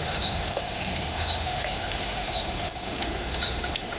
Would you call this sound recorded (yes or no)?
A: no